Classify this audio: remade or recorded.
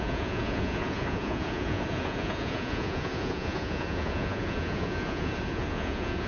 remade